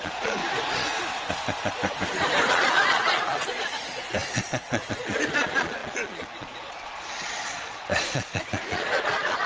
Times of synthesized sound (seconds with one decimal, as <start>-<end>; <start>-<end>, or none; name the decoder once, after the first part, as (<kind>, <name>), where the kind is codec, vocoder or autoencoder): 0.0-0.4 (vocoder, Vocos); 2.5-9.5